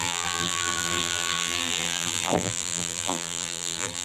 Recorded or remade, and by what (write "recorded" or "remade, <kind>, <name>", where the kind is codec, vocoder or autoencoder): remade, vocoder, BigVGAN v2